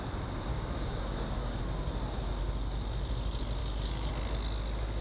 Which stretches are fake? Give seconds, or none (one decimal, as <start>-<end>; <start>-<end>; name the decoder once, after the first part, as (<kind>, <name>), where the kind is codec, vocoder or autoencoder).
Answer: 0.5-1.6 (codec, DAC); 3.6-4.1